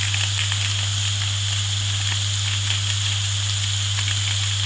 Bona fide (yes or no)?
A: yes